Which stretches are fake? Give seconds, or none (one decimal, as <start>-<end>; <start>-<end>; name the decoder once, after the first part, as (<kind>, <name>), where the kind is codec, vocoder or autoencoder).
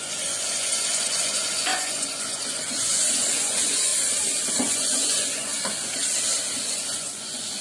0.0-3.9 (vocoder, Vocos); 4.5-6.0; 6.6-7.6